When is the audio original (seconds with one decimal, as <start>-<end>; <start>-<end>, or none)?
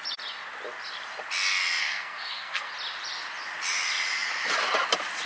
0.0-1.8; 2.7-5.3